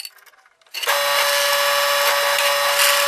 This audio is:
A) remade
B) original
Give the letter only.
B